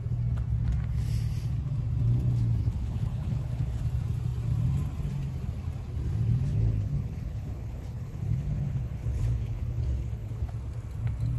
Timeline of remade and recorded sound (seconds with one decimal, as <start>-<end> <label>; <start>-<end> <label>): 0.0-2.6 recorded; 2.6-3.8 remade; 3.8-6.5 recorded; 6.5-10.5 remade; 10.5-11.4 recorded